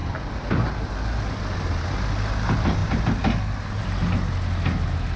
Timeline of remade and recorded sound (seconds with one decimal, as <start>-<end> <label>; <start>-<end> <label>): 0.0-5.2 recorded